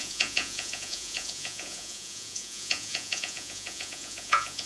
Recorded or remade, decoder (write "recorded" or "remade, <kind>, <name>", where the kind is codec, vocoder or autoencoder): remade, vocoder, Vocos